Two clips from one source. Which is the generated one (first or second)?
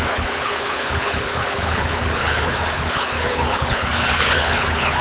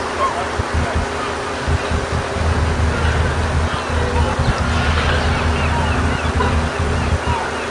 first